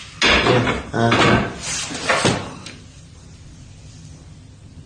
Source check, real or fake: real